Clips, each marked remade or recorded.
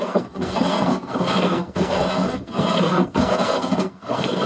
remade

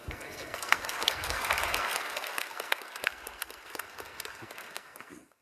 remade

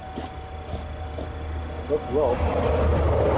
recorded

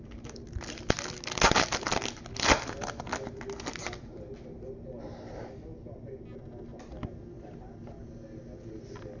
recorded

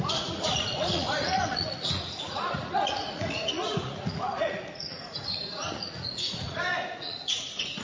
remade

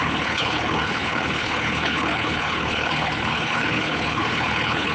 remade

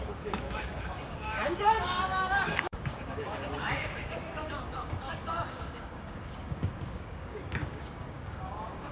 remade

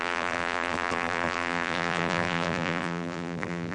remade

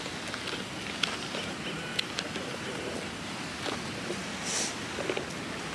recorded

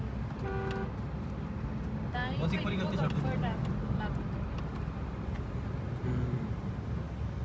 recorded